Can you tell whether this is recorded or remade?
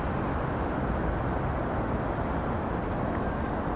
recorded